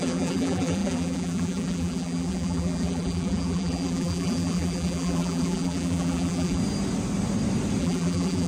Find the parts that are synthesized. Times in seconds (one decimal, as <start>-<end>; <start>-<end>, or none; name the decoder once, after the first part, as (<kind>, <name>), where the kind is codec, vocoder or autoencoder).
0.0-6.6 (vocoder, BigVGAN v2); 7.8-8.5